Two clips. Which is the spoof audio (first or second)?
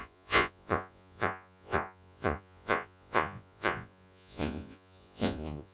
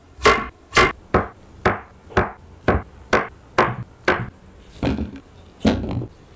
first